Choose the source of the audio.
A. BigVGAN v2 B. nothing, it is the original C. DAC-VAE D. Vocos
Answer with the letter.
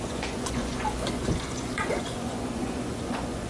D